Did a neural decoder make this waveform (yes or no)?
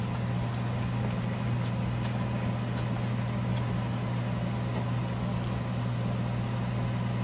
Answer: no